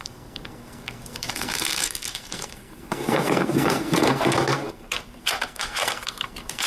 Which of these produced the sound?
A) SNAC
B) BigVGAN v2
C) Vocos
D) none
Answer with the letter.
A